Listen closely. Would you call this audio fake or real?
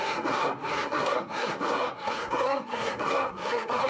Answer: fake